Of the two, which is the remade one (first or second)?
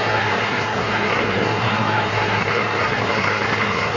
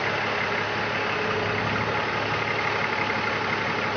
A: first